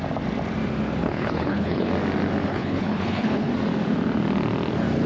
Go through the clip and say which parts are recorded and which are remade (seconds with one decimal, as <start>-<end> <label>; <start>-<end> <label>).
0.0-1.0 recorded; 1.0-1.9 remade; 1.9-2.5 recorded; 2.5-3.5 remade; 3.5-5.1 recorded